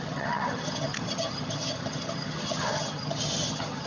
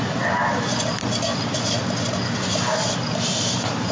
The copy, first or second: first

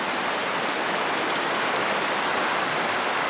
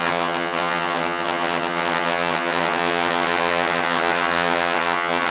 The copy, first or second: second